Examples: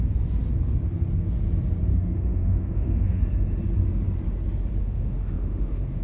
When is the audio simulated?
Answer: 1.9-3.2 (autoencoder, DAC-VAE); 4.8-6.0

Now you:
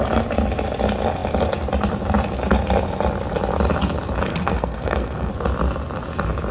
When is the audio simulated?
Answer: 4.3-5.3 (codec, SNAC)